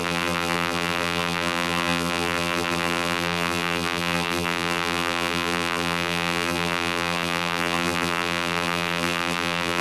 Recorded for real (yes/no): no